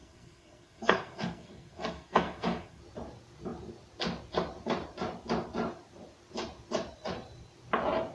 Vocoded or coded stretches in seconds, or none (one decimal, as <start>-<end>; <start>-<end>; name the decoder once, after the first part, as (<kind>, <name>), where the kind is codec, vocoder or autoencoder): 0.0-2.8 (codec, SNAC)